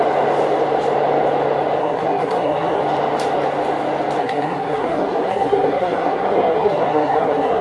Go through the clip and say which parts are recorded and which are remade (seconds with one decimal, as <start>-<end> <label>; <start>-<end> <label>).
0.0-1.8 recorded; 1.8-2.8 remade; 2.8-4.2 recorded; 4.2-7.6 remade